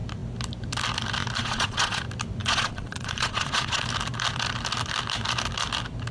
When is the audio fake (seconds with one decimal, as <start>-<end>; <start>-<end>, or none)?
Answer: 1.4-2.0; 2.4-3.8